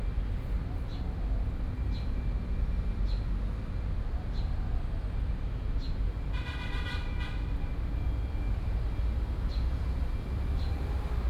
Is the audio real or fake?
real